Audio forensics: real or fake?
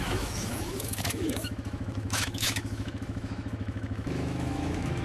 fake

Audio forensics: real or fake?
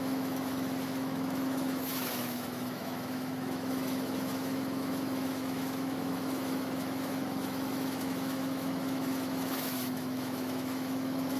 fake